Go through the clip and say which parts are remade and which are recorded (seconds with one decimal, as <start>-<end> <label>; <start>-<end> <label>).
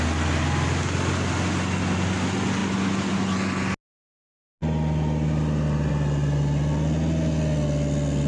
0.0-8.3 recorded